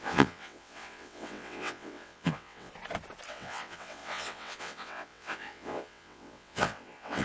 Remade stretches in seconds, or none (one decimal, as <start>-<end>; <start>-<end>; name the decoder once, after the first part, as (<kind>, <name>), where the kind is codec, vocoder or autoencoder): 0.0-2.7 (vocoder, WaveNeXt); 3.3-7.2